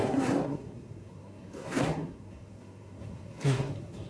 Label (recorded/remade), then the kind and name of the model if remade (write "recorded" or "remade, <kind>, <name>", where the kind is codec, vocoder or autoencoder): remade, codec, SNAC